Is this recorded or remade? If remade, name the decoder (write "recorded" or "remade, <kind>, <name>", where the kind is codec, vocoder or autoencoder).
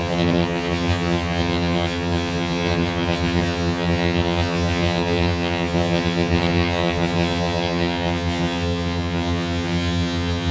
remade, vocoder, HiFi-GAN